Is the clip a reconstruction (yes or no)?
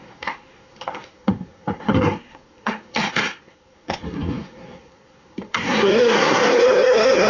yes